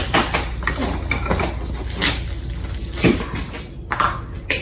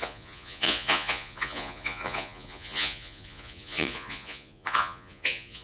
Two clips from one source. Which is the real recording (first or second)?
first